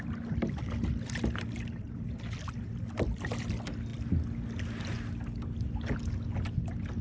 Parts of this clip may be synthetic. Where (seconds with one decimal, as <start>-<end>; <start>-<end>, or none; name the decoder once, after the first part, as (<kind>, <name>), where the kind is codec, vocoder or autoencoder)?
none